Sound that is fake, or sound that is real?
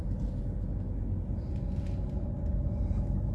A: real